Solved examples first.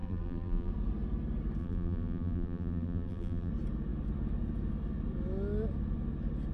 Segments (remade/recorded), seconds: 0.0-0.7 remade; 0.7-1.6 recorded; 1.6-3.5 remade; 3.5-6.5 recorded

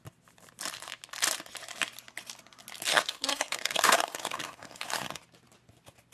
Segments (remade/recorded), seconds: 0.0-2.9 recorded; 2.9-5.2 remade; 5.2-6.1 recorded